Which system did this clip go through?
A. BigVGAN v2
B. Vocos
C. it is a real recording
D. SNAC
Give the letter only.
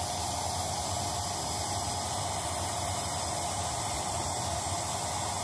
C